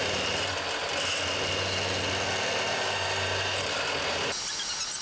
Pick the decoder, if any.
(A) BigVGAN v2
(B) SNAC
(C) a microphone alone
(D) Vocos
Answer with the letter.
C